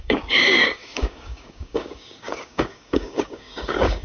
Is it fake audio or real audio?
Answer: fake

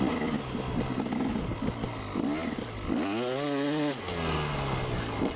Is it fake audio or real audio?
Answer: real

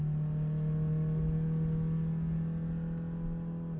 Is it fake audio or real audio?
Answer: real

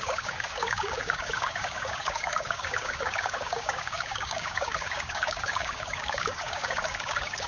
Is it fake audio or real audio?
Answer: fake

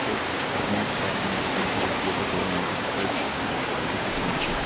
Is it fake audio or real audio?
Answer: fake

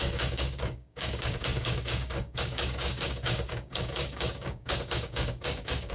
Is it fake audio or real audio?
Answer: fake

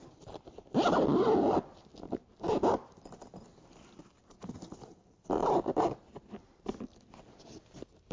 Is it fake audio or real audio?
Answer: real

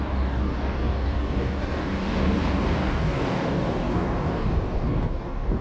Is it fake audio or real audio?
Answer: fake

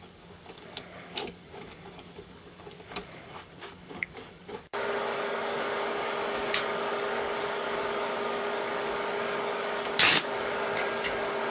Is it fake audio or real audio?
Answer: fake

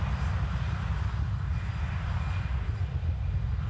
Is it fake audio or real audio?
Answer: real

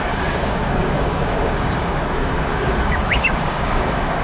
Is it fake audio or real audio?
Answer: fake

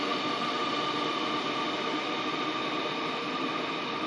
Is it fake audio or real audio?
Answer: real